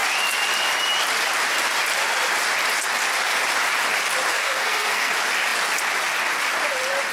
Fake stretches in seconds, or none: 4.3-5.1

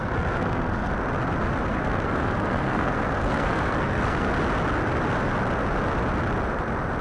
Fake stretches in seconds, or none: 0.0-0.9; 1.7-4.3

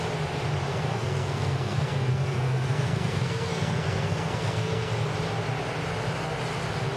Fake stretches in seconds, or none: 0.7-4.9

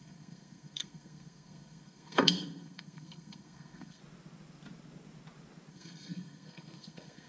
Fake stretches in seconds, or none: 0.0-4.0; 5.7-7.3